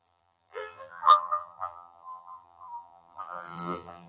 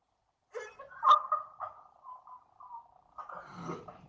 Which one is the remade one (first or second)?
first